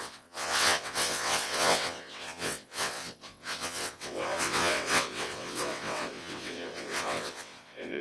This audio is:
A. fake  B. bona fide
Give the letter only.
A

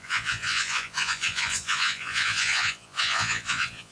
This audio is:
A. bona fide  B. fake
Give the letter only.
B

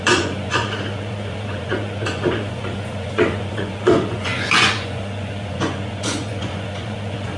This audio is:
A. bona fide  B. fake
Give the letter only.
B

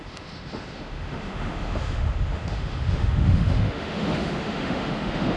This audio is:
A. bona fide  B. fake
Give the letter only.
B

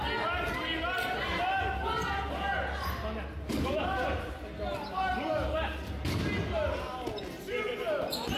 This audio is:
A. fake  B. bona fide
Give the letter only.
B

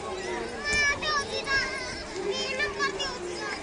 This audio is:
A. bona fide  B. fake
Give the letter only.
A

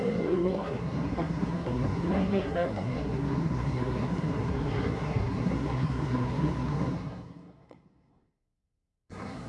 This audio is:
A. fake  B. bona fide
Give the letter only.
A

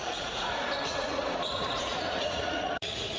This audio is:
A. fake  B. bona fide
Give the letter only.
A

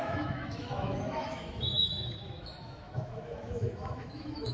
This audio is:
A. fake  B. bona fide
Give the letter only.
A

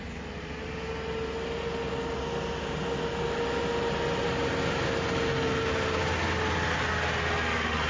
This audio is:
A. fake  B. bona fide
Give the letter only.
B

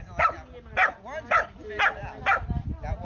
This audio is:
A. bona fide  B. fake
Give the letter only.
A